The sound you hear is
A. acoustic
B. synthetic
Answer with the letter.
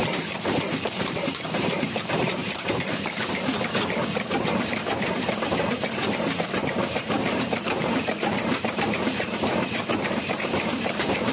B